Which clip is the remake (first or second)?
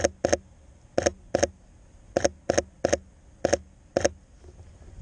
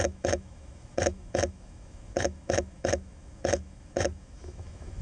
second